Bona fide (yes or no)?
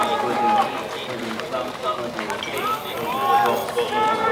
yes